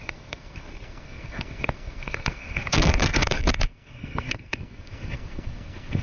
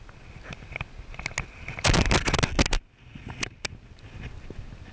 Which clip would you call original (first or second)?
second